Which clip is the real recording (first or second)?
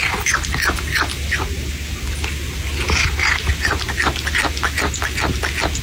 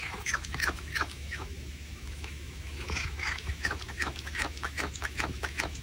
first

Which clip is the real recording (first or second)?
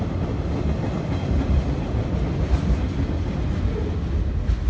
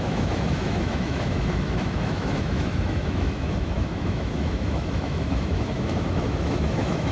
first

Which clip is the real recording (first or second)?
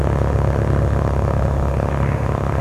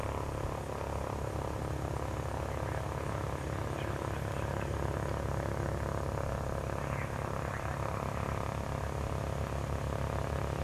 second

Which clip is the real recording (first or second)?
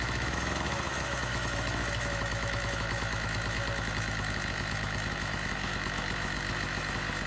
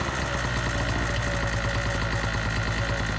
second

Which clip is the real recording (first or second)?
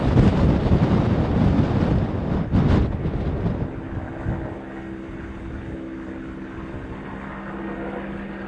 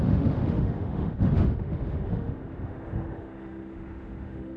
first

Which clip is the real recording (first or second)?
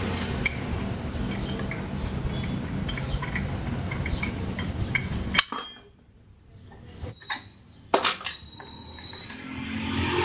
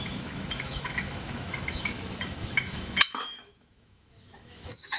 first